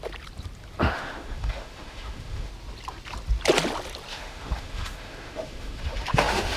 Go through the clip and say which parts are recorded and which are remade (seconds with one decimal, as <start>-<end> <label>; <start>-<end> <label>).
0.0-0.8 recorded; 0.8-2.5 remade; 2.5-4.1 recorded; 4.1-6.6 remade